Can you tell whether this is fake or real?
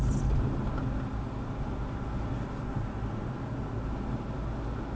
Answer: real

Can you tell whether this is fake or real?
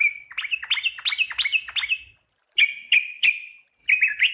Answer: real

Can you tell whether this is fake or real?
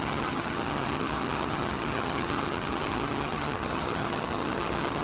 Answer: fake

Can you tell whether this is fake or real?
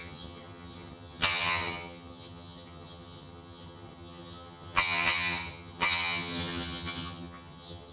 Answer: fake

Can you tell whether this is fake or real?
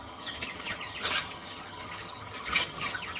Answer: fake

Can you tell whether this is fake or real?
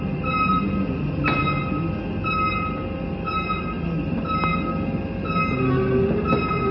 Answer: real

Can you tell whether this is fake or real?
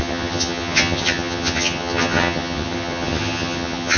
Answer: fake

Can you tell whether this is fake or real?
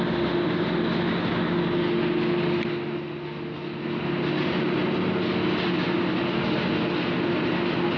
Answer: real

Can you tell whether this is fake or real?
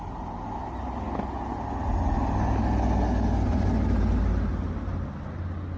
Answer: real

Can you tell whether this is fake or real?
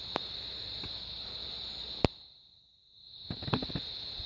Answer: real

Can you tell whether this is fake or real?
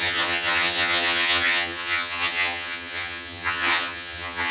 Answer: fake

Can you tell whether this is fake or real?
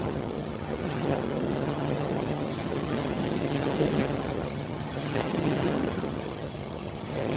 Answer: fake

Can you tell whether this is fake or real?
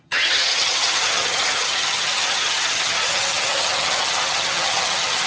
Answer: fake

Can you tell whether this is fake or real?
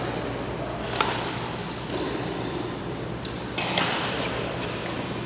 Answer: real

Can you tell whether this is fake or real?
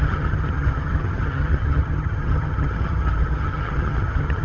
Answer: fake